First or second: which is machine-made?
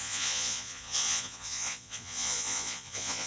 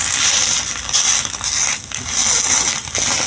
first